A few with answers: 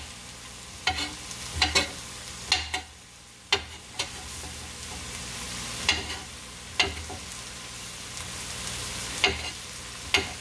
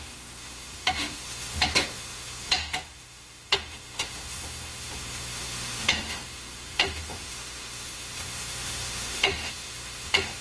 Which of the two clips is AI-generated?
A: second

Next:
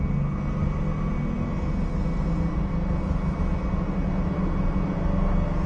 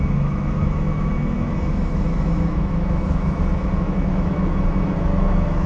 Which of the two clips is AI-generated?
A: second